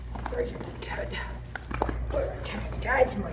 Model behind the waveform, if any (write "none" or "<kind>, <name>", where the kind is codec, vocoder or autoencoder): none